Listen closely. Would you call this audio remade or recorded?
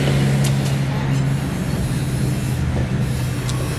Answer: recorded